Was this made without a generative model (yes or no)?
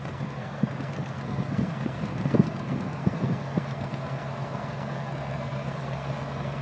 no